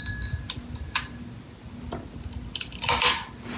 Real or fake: real